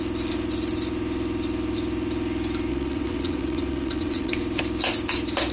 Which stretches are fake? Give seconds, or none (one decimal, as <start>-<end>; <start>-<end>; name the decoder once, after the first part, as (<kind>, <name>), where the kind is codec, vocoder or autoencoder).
2.7-4.3 (vocoder, WaveNeXt)